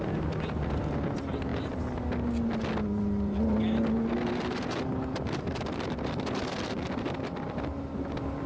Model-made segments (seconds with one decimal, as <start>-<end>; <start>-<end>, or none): none

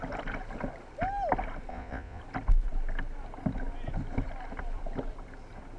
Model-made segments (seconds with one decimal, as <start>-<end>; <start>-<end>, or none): 1.7-2.2

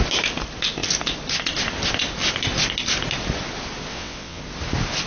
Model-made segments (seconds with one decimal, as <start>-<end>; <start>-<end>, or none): 3.9-4.4

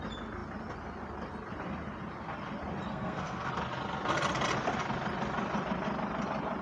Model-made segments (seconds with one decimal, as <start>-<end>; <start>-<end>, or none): 2.9-3.5

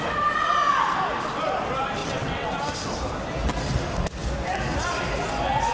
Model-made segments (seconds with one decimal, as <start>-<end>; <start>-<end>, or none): 2.0-2.5

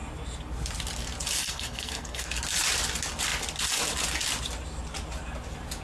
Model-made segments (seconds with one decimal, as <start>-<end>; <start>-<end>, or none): 1.4-2.3